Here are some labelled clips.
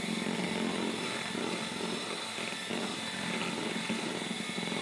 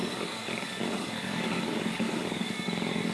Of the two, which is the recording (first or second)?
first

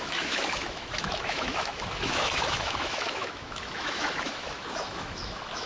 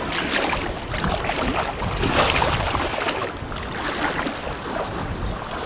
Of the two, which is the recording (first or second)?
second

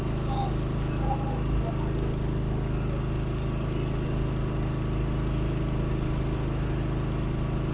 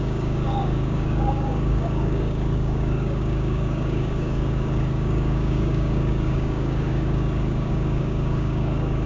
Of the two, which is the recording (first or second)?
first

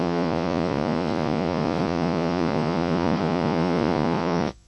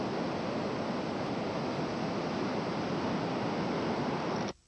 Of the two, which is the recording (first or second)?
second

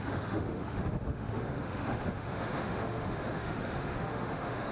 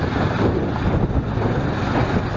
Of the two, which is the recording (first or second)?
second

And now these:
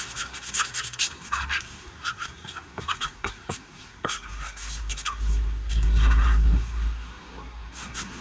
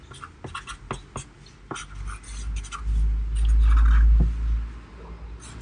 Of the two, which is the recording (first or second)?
second